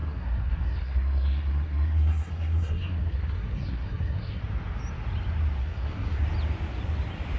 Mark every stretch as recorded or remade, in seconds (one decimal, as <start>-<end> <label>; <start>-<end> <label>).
0.0-4.4 remade; 4.4-5.6 recorded; 5.6-6.2 remade; 6.2-7.4 recorded